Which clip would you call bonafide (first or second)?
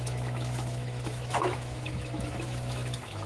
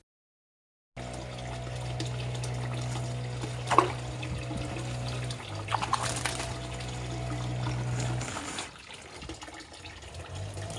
second